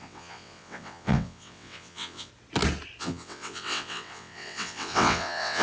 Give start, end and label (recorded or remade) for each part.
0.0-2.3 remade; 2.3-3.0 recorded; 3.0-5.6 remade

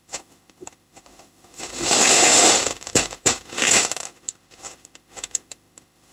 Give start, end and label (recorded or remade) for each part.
0.0-6.1 remade

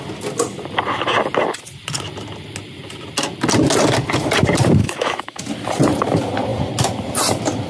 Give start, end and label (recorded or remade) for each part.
0.0-4.8 recorded; 4.8-5.4 remade; 5.4-7.7 recorded

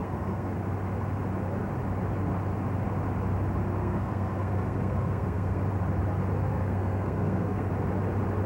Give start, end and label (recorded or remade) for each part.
0.0-0.5 remade; 0.5-3.8 recorded; 3.8-5.6 remade; 5.6-6.5 recorded; 6.5-7.7 remade; 7.7-8.5 recorded

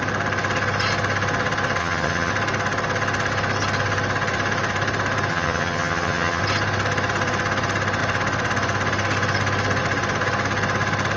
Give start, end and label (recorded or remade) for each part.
0.0-1.8 recorded; 1.8-2.3 remade; 2.3-5.3 recorded; 5.3-6.4 remade; 6.4-11.2 recorded

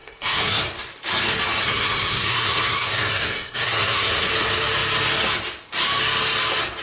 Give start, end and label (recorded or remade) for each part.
0.0-0.6 remade; 0.6-1.6 recorded; 1.6-4.3 remade; 4.3-6.8 recorded

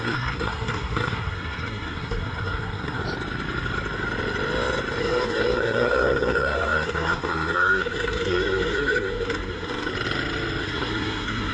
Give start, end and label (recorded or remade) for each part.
0.0-3.0 remade; 3.0-5.0 recorded; 5.0-9.9 remade; 9.9-10.6 recorded; 10.6-11.5 remade